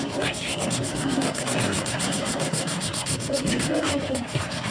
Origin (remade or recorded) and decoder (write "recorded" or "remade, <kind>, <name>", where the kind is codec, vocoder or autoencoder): remade, codec, SNAC